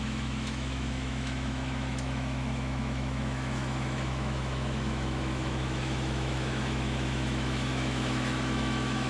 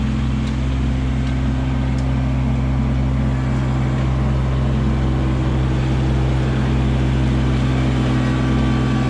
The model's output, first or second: first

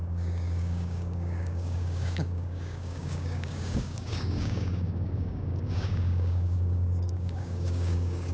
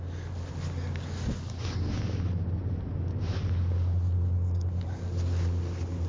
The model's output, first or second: first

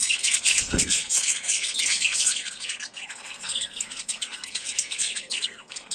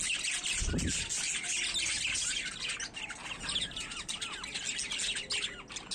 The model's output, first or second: first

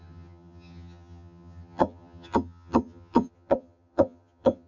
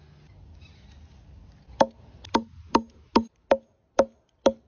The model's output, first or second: first